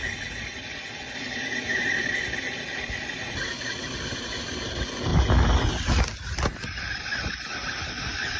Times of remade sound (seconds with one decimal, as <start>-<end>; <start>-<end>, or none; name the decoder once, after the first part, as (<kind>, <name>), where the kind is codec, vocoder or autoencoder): none